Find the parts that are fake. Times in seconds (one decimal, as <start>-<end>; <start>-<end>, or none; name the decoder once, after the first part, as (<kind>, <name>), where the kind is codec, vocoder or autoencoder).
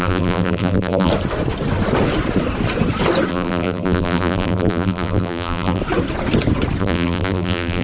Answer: 0.0-1.1 (vocoder, BigVGAN v2); 3.3-5.8; 6.8-7.8